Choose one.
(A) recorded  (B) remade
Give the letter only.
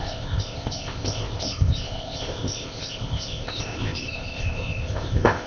B